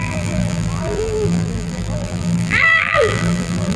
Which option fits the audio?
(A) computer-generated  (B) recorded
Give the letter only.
A